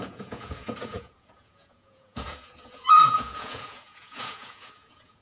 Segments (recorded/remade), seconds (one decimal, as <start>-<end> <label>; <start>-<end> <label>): 0.0-5.2 remade